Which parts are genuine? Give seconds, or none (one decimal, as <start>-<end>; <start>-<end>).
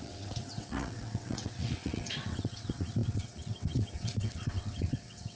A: none